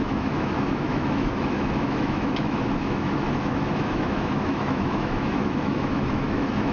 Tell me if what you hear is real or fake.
fake